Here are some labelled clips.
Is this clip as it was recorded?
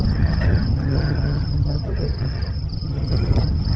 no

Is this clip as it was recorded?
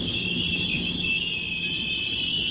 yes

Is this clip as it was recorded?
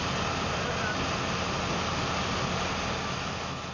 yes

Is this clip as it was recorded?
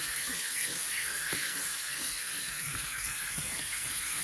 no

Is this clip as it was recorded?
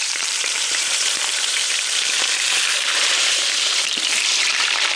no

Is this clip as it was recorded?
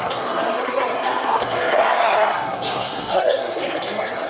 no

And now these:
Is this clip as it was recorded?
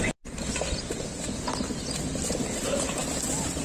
yes